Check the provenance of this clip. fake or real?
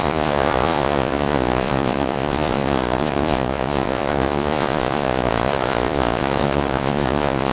fake